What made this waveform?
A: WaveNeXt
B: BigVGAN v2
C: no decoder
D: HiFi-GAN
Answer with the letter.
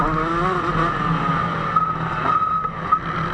C